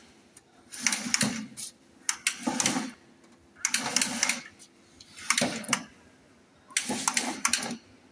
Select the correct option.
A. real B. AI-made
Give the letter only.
A